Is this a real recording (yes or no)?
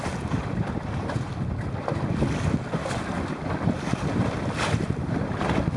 yes